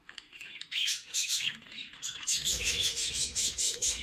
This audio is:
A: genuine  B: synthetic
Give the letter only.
B